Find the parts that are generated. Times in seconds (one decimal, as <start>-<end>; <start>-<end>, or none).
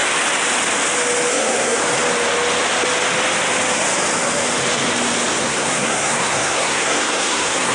1.3-1.8; 5.4-7.7